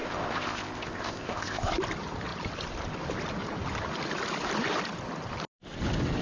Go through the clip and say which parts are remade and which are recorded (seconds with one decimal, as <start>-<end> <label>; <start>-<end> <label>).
0.0-1.7 remade; 1.7-6.2 recorded